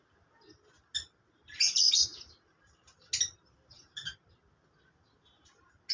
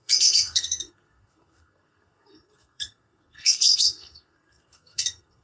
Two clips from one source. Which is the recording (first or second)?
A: first